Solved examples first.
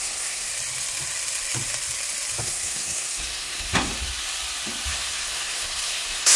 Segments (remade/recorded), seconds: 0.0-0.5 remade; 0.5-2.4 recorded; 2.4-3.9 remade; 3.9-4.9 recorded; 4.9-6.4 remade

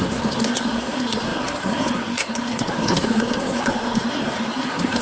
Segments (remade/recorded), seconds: 0.0-5.0 remade

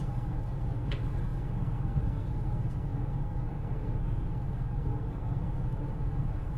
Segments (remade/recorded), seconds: 0.0-6.6 remade

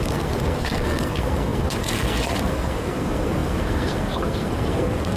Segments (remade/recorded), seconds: 0.0-5.2 remade

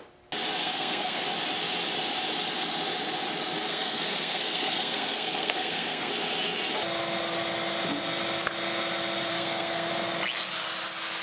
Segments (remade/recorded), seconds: 0.0-0.6 recorded; 0.6-1.2 remade; 1.2-3.7 recorded; 3.7-6.1 remade; 6.1-9.3 recorded; 9.3-9.9 remade; 9.9-11.2 recorded

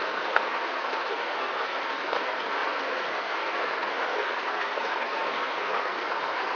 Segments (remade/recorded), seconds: 0.0-6.6 remade